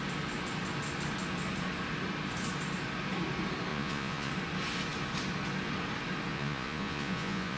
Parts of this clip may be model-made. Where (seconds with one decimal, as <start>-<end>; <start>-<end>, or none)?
3.7-4.3; 6.3-7.6